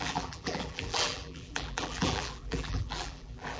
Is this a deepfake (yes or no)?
yes